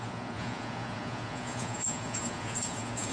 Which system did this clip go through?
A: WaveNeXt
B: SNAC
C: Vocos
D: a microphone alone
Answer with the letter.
C